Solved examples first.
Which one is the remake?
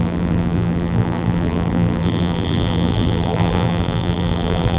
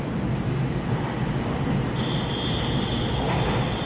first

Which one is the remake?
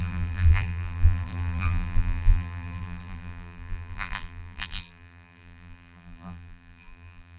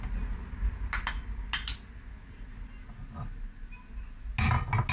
first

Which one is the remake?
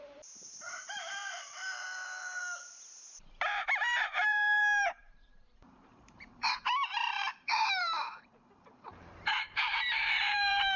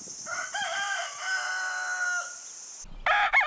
first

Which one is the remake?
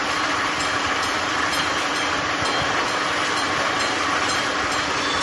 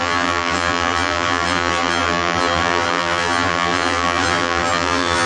second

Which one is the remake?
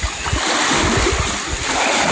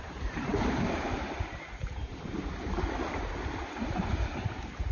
second